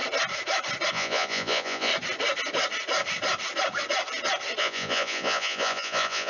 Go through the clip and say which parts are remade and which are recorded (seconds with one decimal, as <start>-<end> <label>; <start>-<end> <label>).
0.0-0.9 recorded; 0.9-1.9 remade; 1.9-4.6 recorded; 4.6-6.3 remade